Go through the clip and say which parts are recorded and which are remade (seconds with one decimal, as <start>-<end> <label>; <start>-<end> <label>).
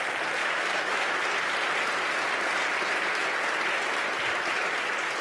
0.0-0.4 recorded; 0.4-1.2 remade; 1.2-5.2 recorded